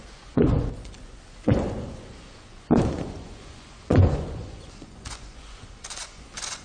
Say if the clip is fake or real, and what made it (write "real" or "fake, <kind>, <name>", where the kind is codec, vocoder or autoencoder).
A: fake, vocoder, Vocos